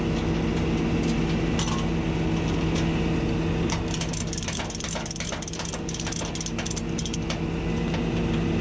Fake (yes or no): no